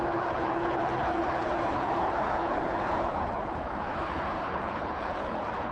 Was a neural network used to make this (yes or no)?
yes